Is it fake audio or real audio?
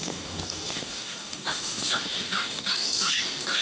fake